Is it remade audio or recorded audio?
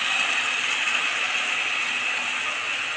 recorded